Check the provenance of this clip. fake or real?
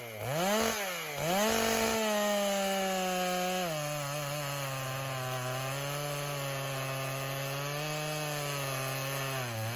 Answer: real